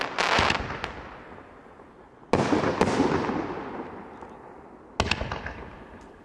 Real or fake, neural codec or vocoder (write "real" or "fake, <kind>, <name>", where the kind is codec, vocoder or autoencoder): real